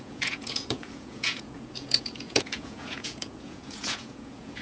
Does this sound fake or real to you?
fake